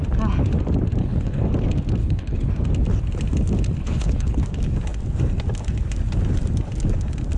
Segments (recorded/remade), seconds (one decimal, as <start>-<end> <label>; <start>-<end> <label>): 0.0-1.0 recorded; 1.0-1.5 remade; 1.5-2.0 recorded; 2.0-2.5 remade; 2.5-3.8 recorded; 3.8-4.4 remade; 4.4-7.4 recorded